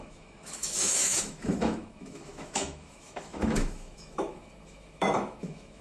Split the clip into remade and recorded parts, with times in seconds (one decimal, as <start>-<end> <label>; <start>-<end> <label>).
0.0-5.8 remade